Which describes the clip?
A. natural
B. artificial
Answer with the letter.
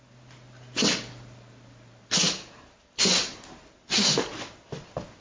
A